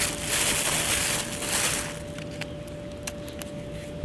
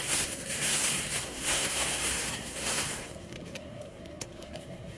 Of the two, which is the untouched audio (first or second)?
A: first